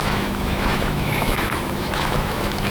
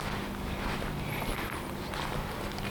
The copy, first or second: first